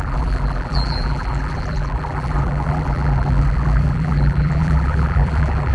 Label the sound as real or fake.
fake